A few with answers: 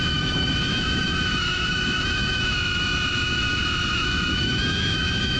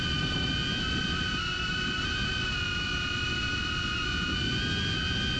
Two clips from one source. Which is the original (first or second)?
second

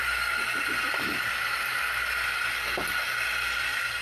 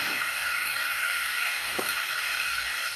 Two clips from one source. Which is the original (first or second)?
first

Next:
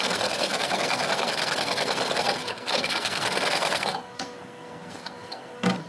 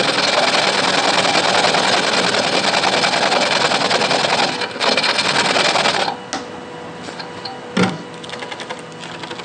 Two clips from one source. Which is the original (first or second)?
second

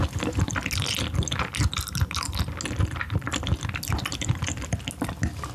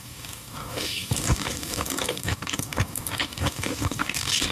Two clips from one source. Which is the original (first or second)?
first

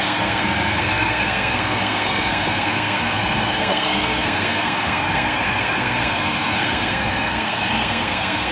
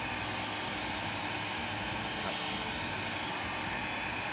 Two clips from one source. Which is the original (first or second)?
second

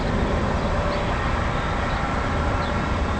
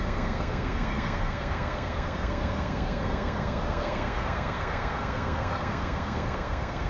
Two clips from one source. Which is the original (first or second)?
first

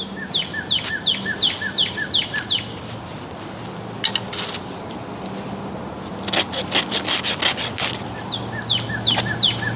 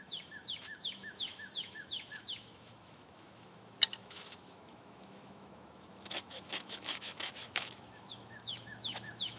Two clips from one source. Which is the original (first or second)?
first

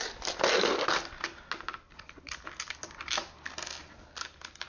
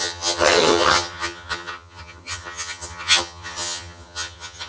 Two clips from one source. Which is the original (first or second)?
first